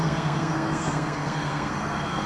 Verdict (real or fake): fake